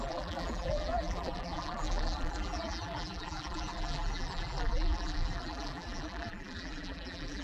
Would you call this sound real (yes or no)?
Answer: no